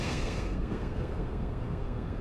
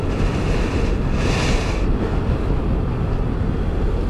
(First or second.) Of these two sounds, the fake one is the first